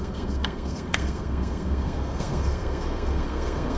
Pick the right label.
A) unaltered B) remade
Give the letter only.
B